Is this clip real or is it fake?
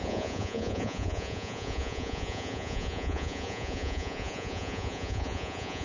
fake